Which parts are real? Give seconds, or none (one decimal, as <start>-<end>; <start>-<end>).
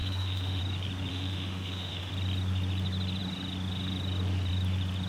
0.6-1.1; 2.1-5.1